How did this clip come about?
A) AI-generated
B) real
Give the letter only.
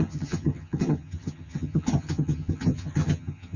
A